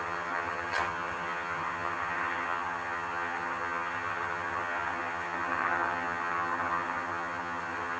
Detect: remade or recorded remade